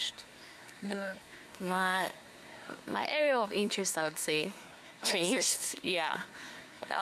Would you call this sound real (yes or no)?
no